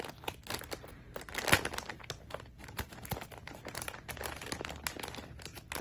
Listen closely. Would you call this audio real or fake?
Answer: real